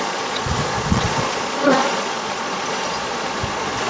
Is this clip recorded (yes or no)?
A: no